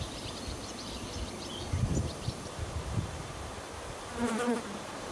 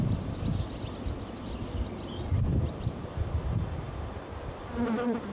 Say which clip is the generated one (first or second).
first